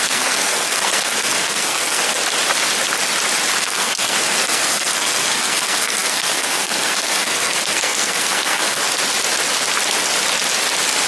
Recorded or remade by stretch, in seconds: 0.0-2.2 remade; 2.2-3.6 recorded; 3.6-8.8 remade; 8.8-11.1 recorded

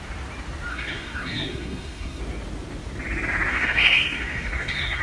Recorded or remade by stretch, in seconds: 0.0-0.7 recorded; 0.7-2.2 remade; 2.2-3.5 recorded; 3.5-5.0 remade

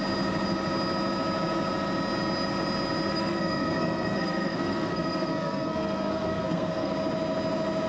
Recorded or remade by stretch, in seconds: 0.0-3.1 recorded; 3.1-6.9 remade; 6.9-7.9 recorded

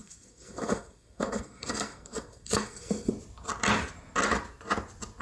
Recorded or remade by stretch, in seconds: 0.0-3.1 remade; 3.1-5.2 recorded

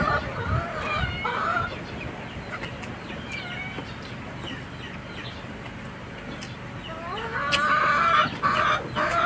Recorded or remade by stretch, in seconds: 0.0-9.3 recorded

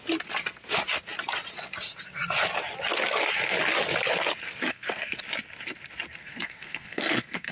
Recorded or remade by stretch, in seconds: 0.0-4.7 recorded; 4.7-5.2 remade; 5.2-6.2 recorded; 6.2-7.5 remade

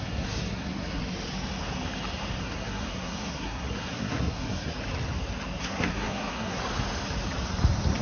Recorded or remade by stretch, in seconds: 0.0-1.0 remade; 1.0-2.4 recorded; 2.4-4.7 remade; 4.7-5.6 recorded; 5.6-6.6 remade; 6.6-8.0 recorded

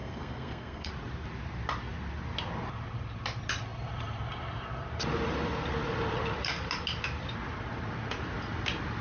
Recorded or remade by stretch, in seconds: 0.0-0.9 remade; 0.9-9.0 recorded